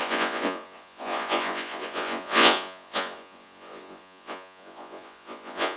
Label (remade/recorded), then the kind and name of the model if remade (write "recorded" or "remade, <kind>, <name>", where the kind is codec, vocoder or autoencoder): remade, vocoder, Vocos